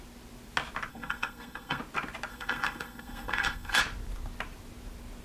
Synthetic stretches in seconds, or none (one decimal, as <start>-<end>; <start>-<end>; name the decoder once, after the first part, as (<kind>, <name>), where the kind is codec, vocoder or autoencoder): 0.9-1.8 (codec, SNAC); 2.3-3.8

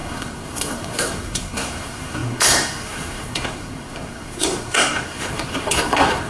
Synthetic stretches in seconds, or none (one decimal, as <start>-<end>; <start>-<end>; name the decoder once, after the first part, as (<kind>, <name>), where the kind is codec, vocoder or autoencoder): 0.0-6.3 (codec, SNAC)

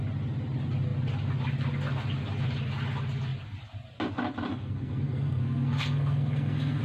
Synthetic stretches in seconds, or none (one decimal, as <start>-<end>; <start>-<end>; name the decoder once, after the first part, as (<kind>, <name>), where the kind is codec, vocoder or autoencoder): 4.5-6.8 (codec, SNAC)

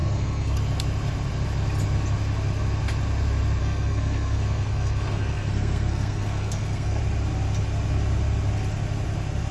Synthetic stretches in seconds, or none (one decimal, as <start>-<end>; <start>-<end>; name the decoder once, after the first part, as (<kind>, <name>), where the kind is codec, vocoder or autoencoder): 0.0-0.6 (codec, SNAC); 3.6-7.0

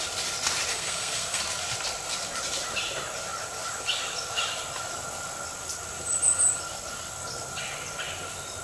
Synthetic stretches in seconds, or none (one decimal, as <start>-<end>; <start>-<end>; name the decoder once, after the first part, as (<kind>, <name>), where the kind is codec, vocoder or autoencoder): 0.7-1.4 (codec, SNAC)

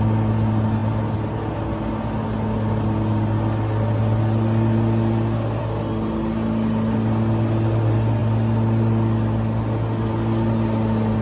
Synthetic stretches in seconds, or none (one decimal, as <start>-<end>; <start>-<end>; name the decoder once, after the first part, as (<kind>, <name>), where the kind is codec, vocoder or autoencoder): none